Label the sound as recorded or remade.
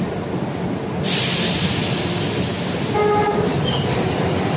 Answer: recorded